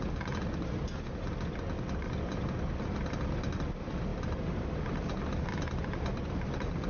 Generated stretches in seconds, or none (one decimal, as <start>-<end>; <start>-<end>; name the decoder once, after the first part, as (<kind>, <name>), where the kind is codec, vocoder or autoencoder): none